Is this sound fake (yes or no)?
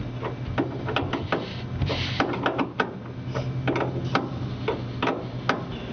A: no